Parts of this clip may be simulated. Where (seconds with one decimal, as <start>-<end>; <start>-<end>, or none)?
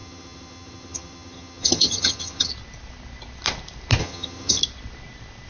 0.0-2.5; 4.0-4.6